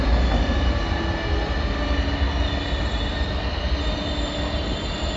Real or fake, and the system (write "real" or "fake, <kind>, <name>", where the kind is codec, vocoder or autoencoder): real